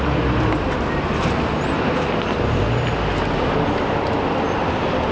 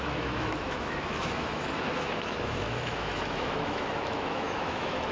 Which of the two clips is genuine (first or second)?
first